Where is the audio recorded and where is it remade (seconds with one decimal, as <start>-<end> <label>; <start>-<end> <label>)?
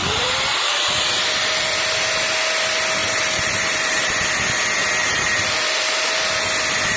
0.0-1.0 remade; 1.0-3.0 recorded; 3.0-4.1 remade; 4.1-5.0 recorded; 5.0-6.3 remade; 6.3-7.0 recorded